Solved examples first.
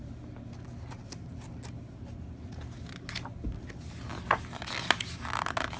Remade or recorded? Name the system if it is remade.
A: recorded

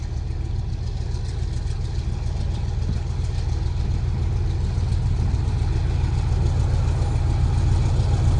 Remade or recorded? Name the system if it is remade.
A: recorded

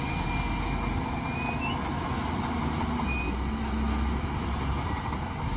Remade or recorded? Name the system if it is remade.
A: recorded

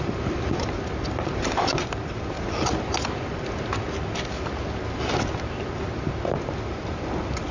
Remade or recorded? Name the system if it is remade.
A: recorded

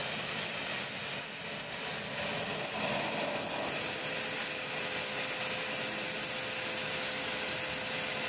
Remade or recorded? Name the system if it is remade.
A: recorded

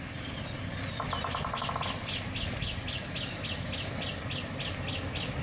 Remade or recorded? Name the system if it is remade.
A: recorded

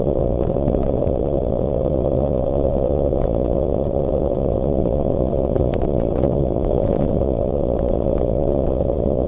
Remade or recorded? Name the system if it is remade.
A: remade, vocoder, WaveNeXt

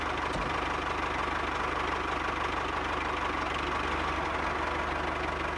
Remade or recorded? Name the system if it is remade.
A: recorded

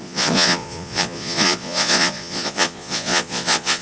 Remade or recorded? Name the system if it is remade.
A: remade, vocoder, Vocos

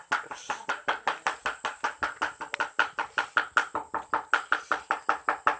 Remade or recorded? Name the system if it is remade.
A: recorded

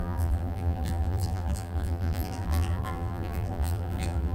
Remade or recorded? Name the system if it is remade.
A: remade, vocoder, BigVGAN v2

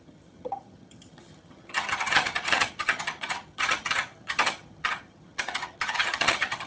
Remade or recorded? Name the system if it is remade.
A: remade, vocoder, HiFi-GAN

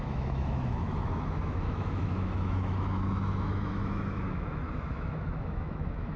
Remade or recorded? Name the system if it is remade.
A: remade, autoencoder, DAC-VAE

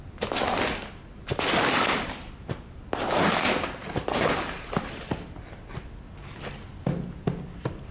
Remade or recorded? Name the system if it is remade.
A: recorded